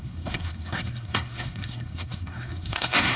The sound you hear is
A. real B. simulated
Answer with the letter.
B